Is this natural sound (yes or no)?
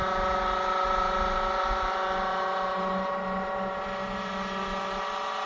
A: yes